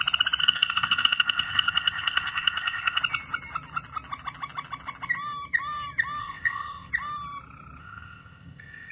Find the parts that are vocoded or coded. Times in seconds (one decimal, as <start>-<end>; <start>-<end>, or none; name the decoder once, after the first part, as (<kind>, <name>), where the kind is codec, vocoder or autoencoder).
0.4-3.0 (codec, ZipCodec); 6.2-6.9; 7.8-8.9